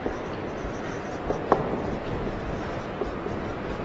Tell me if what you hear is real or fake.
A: real